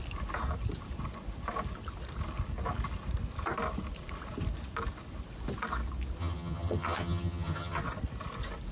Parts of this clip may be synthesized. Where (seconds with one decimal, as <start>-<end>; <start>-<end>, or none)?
6.2-7.8